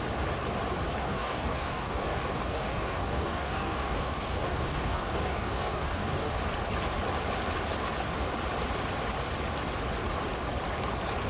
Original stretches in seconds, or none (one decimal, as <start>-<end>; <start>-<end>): 0.0-1.0; 6.3-11.3